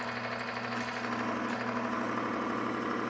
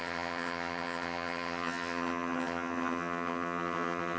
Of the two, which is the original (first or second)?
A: first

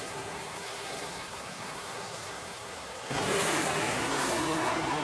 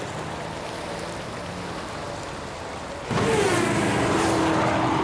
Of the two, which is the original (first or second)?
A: second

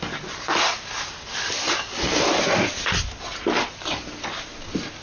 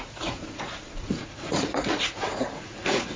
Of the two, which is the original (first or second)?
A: first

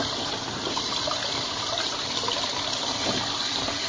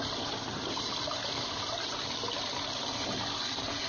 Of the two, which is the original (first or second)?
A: second